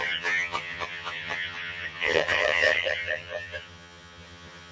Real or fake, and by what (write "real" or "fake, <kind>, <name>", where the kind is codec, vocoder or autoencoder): fake, vocoder, HiFi-GAN